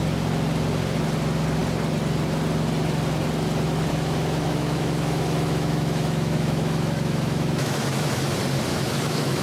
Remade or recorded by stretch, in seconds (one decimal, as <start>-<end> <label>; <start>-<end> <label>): 0.0-3.9 recorded; 3.9-8.2 remade; 8.2-8.7 recorded; 8.7-9.4 remade